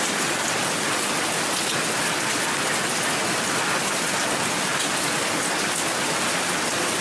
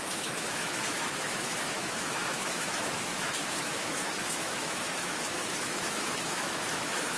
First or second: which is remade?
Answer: second